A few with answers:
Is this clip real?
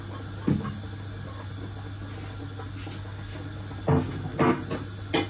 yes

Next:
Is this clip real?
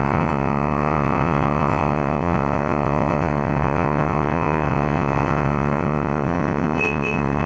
no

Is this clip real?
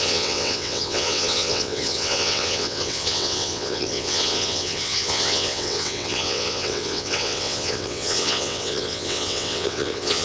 no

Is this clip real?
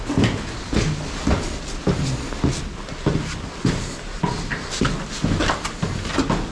yes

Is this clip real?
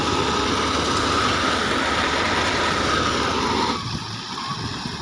yes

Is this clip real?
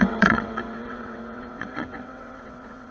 no